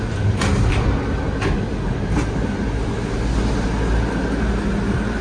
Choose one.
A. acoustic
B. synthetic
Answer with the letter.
A